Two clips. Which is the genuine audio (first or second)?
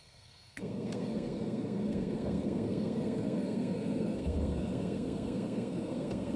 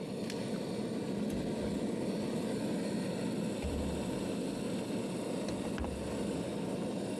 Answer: second